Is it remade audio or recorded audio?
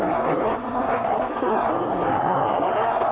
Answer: remade